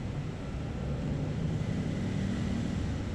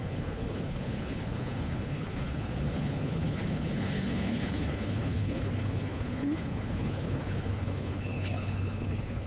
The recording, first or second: first